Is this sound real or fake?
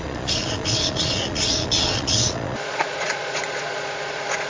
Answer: fake